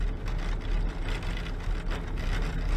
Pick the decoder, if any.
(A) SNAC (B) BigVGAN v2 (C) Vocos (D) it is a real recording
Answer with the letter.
D